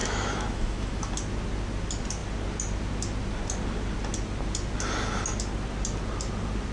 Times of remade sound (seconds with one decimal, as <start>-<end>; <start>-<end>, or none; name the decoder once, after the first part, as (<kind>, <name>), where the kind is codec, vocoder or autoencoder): 0.0-1.1 (autoencoder, DAC-VAE)